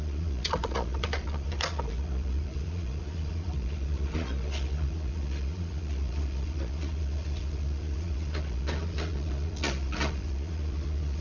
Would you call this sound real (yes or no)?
no